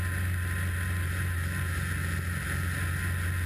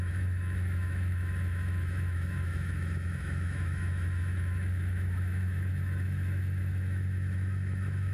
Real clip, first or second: first